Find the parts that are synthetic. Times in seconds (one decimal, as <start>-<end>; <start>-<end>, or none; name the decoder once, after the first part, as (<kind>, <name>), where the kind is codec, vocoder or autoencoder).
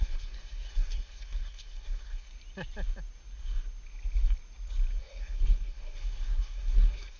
0.0-2.3 (codec, SNAC); 5.0-7.2